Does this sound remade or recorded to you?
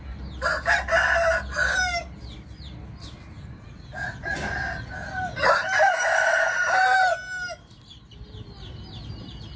recorded